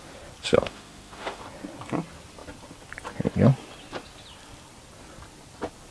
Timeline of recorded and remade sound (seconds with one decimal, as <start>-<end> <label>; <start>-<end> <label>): 0.0-0.5 recorded; 0.5-1.4 remade; 1.4-5.9 recorded